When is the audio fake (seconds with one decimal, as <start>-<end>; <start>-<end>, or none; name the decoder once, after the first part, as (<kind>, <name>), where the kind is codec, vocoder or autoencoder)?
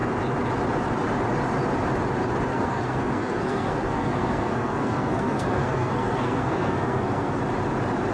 2.5-7.4 (codec, SNAC)